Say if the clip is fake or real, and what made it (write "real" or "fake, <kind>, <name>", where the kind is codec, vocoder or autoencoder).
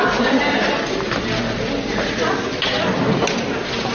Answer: real